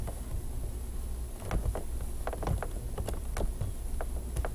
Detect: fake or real real